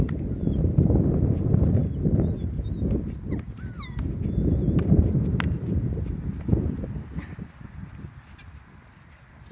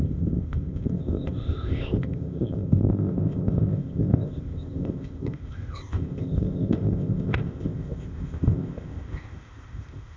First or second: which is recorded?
first